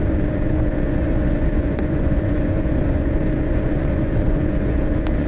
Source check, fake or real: fake